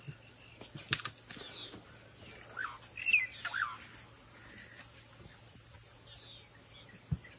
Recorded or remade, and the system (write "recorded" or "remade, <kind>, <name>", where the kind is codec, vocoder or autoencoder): recorded